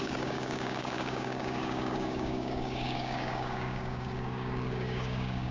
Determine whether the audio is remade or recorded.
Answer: remade